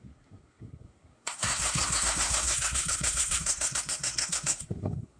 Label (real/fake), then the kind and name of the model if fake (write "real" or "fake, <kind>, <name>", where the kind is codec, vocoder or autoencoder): fake, codec, SNAC